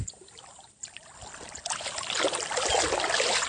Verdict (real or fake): real